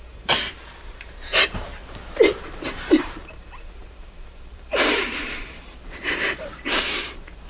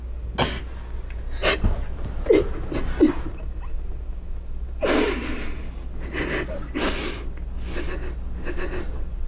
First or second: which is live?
second